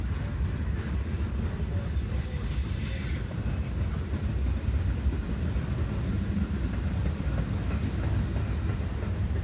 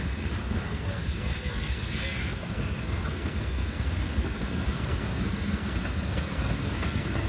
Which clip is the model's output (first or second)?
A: second